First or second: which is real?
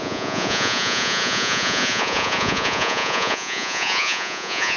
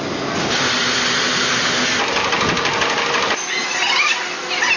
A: second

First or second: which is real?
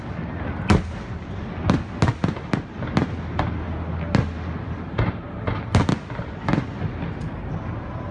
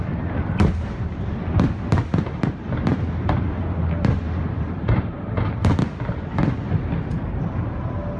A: first